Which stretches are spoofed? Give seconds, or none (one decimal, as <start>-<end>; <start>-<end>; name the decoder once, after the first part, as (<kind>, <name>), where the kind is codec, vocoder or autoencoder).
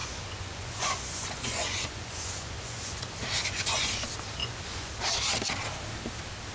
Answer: 0.0-3.9 (vocoder, Vocos); 4.4-4.9